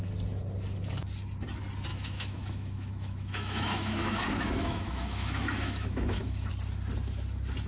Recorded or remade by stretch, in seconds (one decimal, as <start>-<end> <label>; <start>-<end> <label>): 0.0-1.9 recorded; 1.9-6.5 remade; 6.5-7.7 recorded